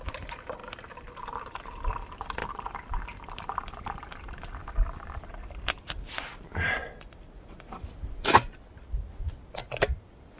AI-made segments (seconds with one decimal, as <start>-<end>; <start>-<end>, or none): 0.6-1.1